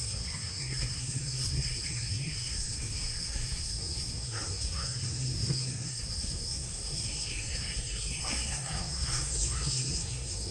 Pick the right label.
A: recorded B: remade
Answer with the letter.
B